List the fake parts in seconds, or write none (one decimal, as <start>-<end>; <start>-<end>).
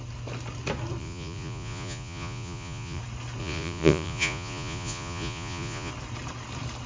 1.0-3.0; 3.4-5.9